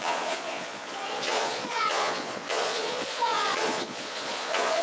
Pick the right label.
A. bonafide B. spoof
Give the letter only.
B